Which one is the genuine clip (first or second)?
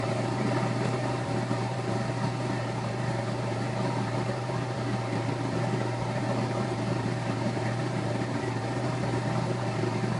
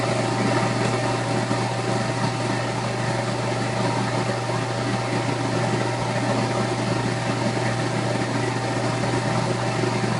second